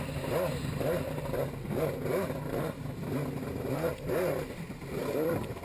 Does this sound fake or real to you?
real